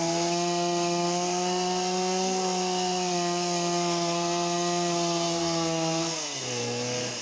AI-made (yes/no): yes